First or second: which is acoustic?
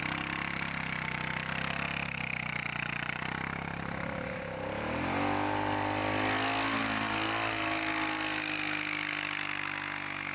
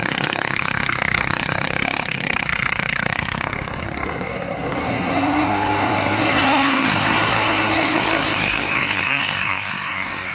first